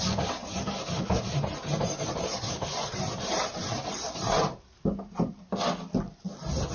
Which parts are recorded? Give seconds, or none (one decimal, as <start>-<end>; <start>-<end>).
0.0-0.4; 1.0-1.5; 5.3-6.7